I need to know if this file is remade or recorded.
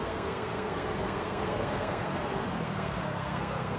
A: remade